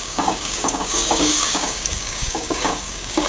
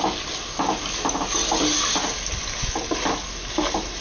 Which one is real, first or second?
second